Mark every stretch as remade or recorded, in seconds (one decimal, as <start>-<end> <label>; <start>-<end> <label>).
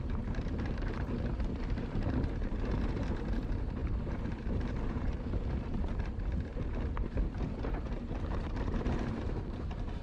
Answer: 0.0-10.0 remade